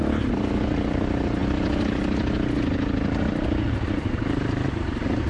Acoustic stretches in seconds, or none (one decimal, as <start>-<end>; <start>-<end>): 0.0-5.3